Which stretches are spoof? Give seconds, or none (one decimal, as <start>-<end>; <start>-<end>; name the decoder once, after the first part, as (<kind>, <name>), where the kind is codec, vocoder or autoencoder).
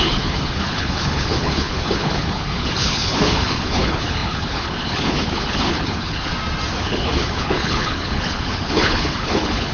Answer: 0.0-6.3 (codec, HILCodec); 6.8-9.7